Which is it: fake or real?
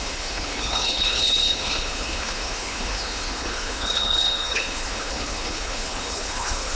fake